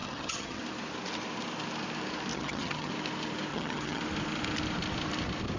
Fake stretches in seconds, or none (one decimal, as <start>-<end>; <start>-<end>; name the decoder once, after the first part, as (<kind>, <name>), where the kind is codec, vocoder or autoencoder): 0.0-0.6 (vocoder, HiFi-GAN); 2.3-2.9; 3.5-4.0